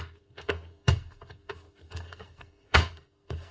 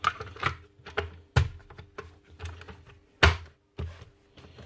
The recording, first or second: second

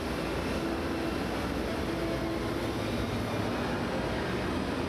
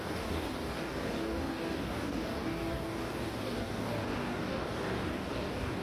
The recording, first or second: first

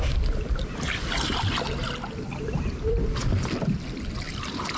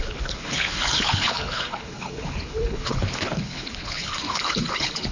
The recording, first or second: first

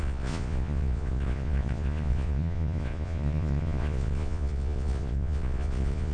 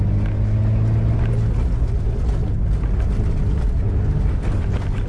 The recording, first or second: second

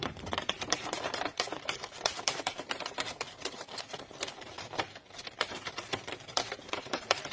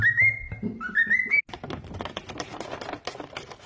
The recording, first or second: second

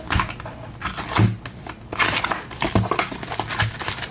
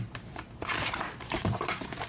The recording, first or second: first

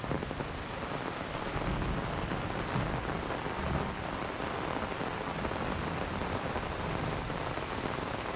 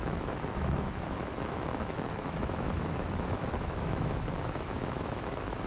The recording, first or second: first